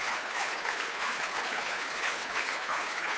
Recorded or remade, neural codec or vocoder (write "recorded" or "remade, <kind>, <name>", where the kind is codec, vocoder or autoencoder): remade, codec, HILCodec